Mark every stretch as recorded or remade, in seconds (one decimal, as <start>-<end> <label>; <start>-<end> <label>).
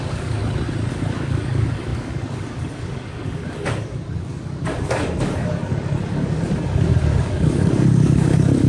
0.0-0.4 remade; 0.4-0.9 recorded; 0.9-8.7 remade